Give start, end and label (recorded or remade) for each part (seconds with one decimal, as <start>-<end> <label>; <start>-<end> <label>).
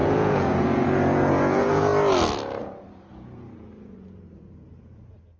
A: 0.0-1.9 remade; 1.9-2.6 recorded; 2.6-5.4 remade